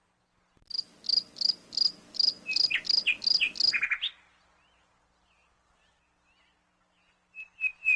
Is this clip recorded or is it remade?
recorded